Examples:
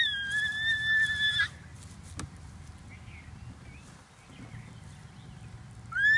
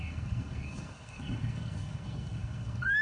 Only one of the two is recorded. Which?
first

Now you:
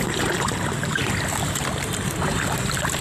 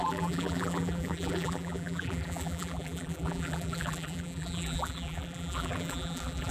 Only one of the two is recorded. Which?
first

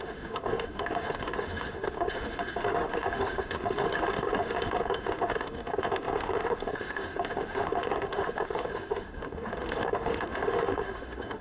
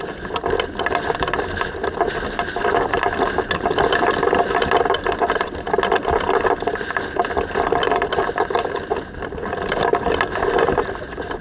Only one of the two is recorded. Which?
second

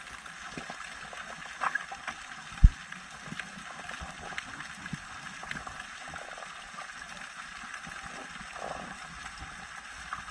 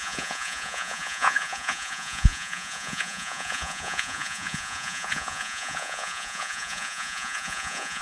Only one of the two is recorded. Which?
first